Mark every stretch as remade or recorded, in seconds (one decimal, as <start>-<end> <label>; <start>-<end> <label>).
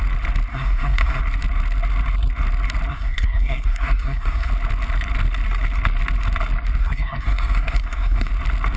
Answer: 0.0-0.5 recorded; 0.5-1.2 remade; 1.2-2.9 recorded; 2.9-4.5 remade; 4.5-6.8 recorded; 6.8-8.3 remade; 8.3-8.8 recorded